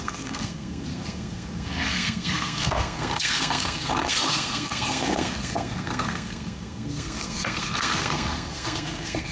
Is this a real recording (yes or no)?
no